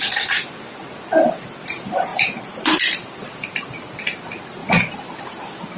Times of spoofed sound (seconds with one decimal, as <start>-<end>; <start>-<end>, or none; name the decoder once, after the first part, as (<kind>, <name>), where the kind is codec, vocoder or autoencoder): none